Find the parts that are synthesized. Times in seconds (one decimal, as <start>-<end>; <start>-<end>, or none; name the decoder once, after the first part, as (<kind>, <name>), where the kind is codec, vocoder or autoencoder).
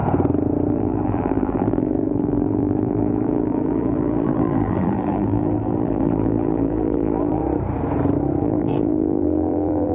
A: 0.7-7.4 (vocoder, BigVGAN v2); 8.4-9.9